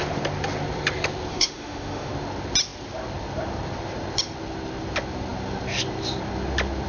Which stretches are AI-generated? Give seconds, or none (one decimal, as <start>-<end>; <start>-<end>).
1.3-2.1